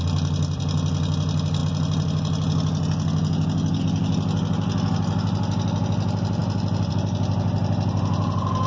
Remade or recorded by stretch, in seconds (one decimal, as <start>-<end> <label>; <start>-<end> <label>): 0.0-8.7 recorded